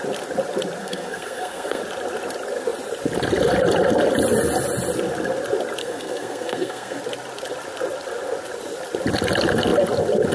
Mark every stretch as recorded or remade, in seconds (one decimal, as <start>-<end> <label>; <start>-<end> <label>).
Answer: 0.0-0.8 recorded; 0.8-1.8 remade; 1.8-5.8 recorded; 5.8-7.0 remade; 7.0-10.3 recorded